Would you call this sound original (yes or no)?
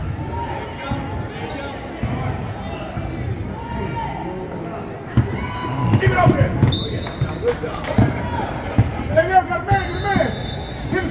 yes